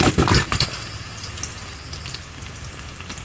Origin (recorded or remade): recorded